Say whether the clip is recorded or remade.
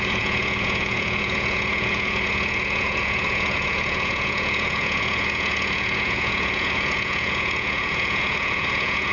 remade